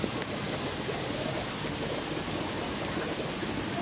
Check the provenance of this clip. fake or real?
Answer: real